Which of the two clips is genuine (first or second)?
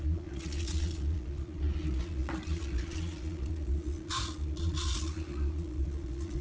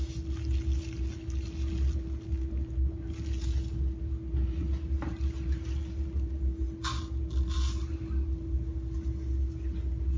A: second